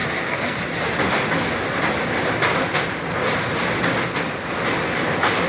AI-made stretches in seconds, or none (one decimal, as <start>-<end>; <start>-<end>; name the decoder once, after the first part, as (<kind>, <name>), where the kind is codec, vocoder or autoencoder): 0.0-0.6 (codec, SNAC)